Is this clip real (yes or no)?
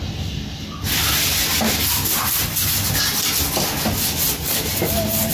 yes